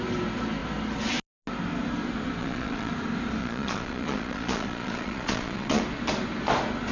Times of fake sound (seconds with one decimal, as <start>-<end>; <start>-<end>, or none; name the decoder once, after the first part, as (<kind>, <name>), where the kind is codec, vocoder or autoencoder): 2.4-2.9 (vocoder, Vocos); 3.4-5.8